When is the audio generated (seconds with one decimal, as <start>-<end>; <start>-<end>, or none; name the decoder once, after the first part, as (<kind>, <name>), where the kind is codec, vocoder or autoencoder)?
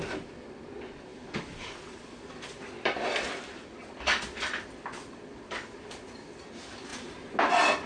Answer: 1.1-5.4 (vocoder, BigVGAN v2)